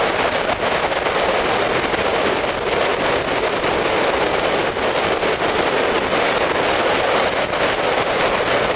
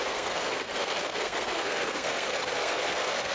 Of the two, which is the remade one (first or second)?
second